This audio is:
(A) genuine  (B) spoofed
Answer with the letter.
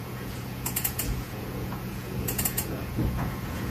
B